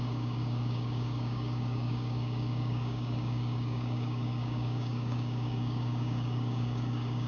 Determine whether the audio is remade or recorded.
remade